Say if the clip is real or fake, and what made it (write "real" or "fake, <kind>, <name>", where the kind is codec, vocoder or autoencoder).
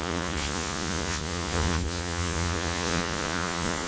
fake, vocoder, Vocos